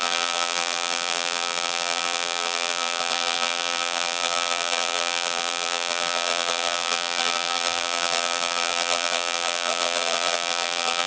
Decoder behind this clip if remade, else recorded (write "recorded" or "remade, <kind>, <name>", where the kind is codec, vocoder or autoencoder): remade, vocoder, BigVGAN v2